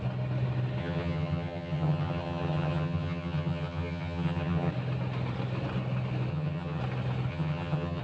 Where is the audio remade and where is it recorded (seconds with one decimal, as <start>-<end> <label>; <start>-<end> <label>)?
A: 0.0-0.8 recorded; 0.8-4.7 remade; 4.7-6.3 recorded; 6.3-6.8 remade; 6.8-7.3 recorded; 7.3-8.0 remade